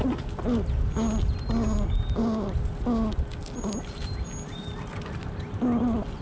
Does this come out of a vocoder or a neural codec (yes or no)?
no